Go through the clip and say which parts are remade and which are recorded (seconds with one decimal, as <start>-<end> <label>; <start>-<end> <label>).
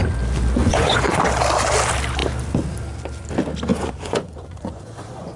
0.0-0.6 recorded; 0.6-1.2 remade; 1.2-3.7 recorded; 3.7-5.4 remade